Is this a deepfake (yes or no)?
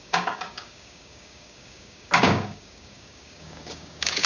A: yes